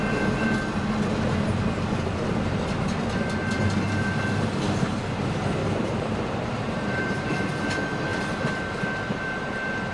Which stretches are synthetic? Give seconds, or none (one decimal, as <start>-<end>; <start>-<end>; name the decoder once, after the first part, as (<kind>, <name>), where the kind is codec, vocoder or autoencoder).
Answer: 5.6-7.5 (vocoder, BigVGAN v2); 8.1-9.4